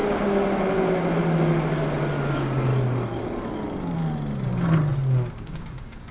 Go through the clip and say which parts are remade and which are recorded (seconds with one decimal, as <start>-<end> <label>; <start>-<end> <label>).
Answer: 0.0-2.3 recorded; 2.3-2.7 remade; 2.7-5.3 recorded; 5.3-6.1 remade